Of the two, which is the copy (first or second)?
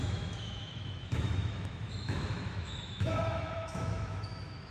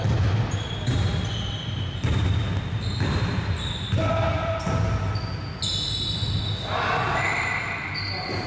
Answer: first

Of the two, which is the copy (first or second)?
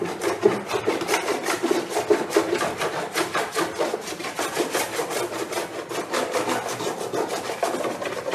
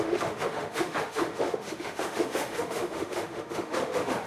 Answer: second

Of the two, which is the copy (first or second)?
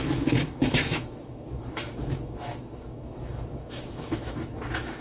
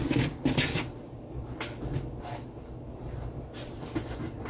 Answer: first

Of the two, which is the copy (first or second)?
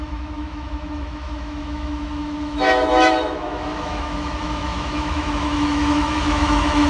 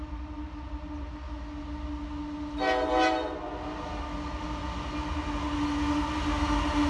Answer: first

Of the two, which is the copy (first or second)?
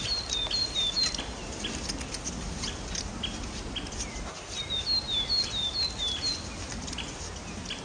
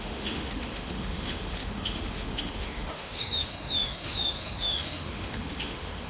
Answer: second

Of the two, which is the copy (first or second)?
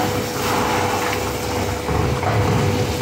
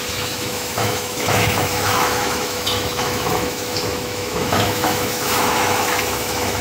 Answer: second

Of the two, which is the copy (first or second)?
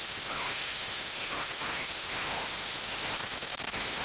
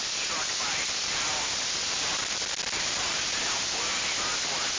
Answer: first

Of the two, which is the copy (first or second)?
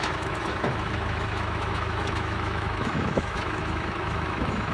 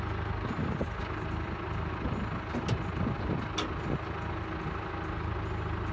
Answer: first